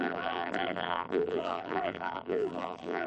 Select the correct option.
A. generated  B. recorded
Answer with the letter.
A